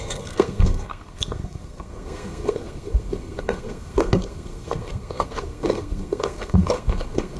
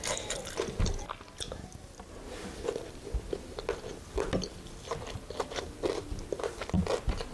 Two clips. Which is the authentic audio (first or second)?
second